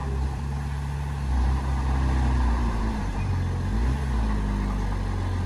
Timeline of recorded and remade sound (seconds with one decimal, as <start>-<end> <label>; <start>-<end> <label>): 0.0-3.3 remade; 3.3-5.5 recorded